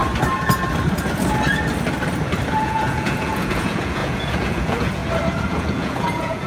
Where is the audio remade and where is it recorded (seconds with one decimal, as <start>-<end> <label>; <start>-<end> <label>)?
0.0-2.5 recorded; 2.5-5.0 remade; 5.0-5.5 recorded; 5.5-6.5 remade